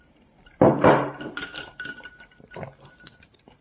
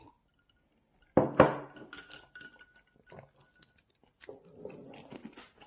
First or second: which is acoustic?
second